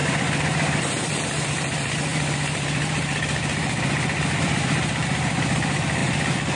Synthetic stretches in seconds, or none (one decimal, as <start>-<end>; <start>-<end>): 0.0-6.0